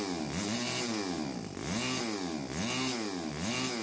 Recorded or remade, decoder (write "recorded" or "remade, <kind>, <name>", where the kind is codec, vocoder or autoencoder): recorded